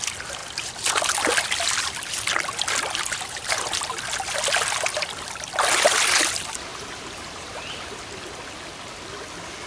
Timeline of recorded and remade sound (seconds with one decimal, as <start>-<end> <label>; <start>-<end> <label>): 0.0-0.4 recorded; 0.4-5.6 remade; 5.6-6.7 recorded; 6.7-7.6 remade; 7.6-9.7 recorded